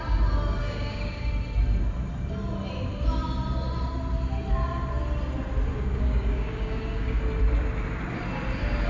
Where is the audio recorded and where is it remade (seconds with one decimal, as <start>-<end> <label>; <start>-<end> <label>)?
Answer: 0.0-0.6 recorded; 0.6-1.3 remade; 1.3-5.7 recorded; 5.7-7.2 remade; 7.2-8.9 recorded